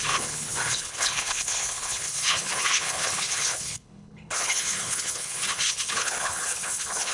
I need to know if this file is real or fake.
fake